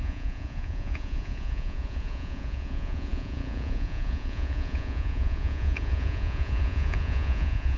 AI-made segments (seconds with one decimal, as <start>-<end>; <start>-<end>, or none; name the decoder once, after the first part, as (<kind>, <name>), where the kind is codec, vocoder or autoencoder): 0.0-7.8 (vocoder, Vocos)